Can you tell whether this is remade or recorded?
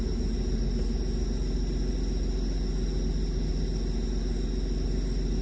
recorded